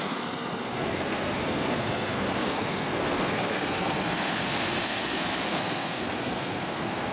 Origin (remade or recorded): remade